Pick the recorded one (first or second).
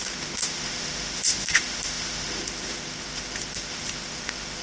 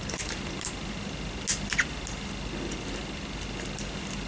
second